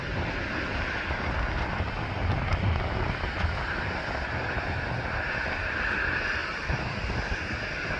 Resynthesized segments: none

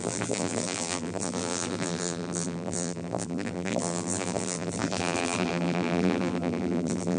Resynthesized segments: 0.0-7.2 (vocoder, BigVGAN v2)

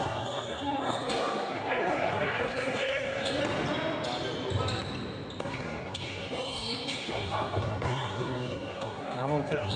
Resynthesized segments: 0.0-3.4 (codec, SNAC); 5.4-9.8

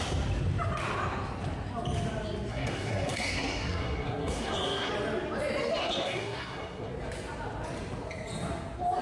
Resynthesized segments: 2.5-4.9 (codec, SNAC); 5.8-6.9

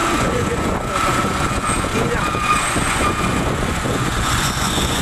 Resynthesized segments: 0.0-5.0 (vocoder, Vocos)